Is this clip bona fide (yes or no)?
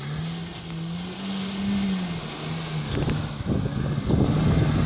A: yes